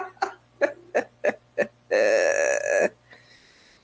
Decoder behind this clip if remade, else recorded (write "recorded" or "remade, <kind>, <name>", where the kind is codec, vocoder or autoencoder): recorded